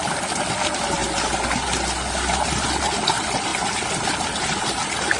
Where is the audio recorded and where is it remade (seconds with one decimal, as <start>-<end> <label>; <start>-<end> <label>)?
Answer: 0.0-5.2 recorded